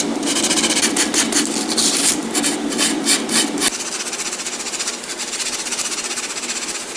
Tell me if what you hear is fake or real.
real